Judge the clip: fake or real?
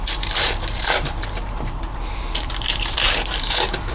fake